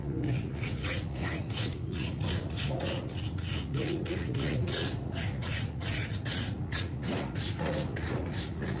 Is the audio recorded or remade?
remade